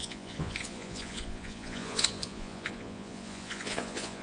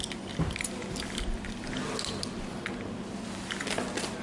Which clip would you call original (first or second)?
second